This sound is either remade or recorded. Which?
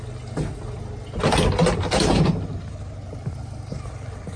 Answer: recorded